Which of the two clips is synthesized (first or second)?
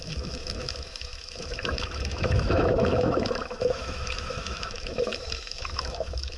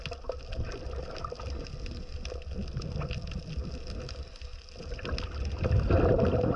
first